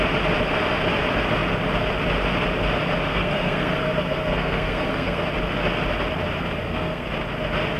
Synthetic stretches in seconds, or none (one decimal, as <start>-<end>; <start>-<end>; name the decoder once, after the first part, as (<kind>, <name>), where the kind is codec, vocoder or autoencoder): 3.1-5.2 (codec, SNAC); 6.6-7.1